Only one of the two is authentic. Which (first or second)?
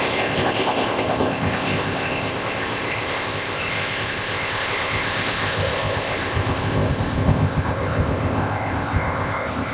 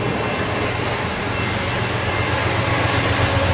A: second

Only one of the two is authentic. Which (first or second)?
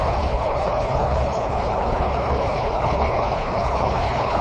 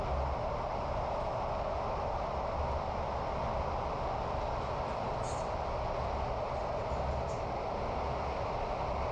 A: second